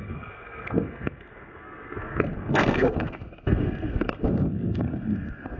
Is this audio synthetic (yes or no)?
yes